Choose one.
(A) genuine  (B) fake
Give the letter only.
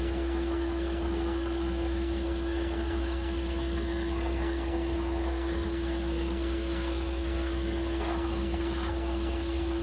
B